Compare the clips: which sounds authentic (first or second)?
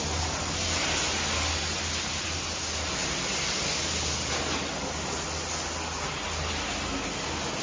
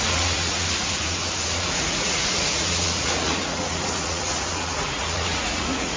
first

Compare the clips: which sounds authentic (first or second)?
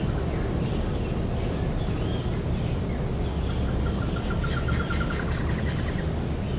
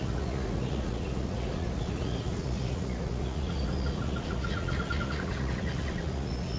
first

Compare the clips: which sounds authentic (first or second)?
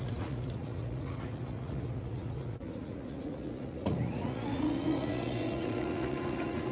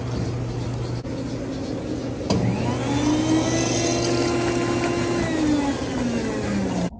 second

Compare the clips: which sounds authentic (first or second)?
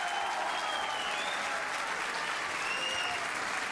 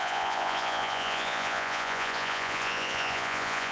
first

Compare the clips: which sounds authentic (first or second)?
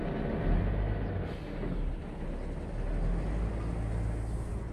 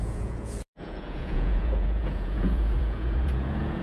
first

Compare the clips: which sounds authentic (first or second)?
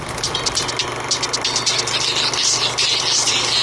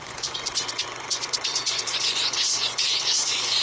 first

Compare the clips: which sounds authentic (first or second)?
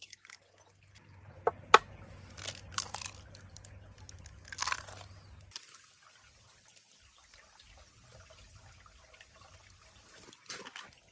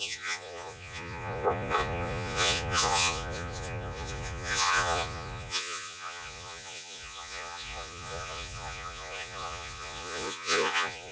first